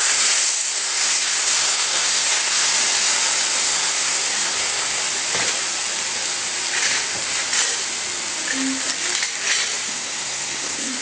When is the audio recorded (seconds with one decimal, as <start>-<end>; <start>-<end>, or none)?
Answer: 2.7-3.6; 5.0-9.9